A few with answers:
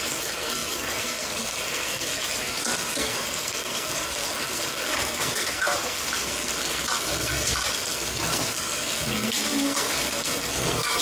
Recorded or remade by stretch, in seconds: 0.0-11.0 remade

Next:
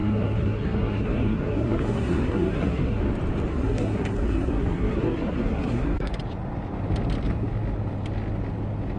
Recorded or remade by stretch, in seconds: 0.0-3.0 remade; 3.0-3.5 recorded; 3.5-6.1 remade; 6.1-9.0 recorded

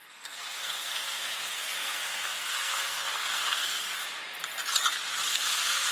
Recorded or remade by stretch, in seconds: 0.0-4.0 remade; 4.0-5.3 recorded; 5.3-5.9 remade

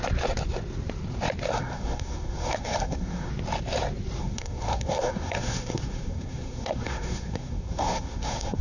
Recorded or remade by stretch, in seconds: 0.0-1.5 recorded; 1.5-3.3 remade; 3.3-4.2 recorded; 4.2-8.6 remade